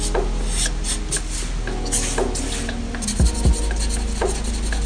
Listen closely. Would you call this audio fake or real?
real